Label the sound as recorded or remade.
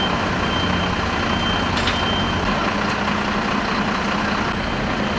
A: recorded